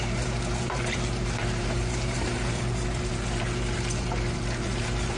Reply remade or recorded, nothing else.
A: remade